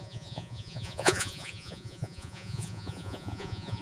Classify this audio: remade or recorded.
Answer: remade